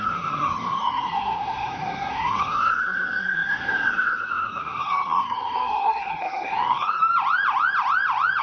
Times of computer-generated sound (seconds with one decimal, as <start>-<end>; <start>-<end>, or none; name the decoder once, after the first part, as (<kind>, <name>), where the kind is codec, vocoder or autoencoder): 0.0-7.0 (codec, SNAC)